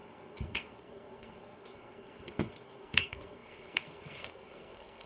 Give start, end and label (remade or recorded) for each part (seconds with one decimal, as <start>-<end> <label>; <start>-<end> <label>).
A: 0.0-5.1 remade